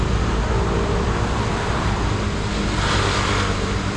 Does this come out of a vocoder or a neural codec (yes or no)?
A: no